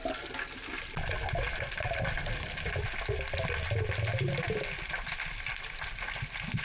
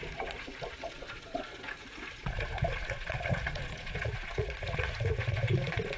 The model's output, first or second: second